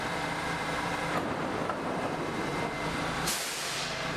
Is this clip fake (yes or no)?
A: yes